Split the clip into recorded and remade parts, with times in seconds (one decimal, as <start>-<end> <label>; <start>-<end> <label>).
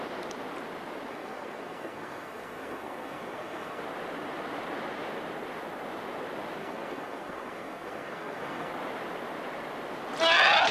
0.0-1.1 recorded; 1.1-3.8 remade; 3.8-6.6 recorded; 6.6-8.7 remade; 8.7-10.7 recorded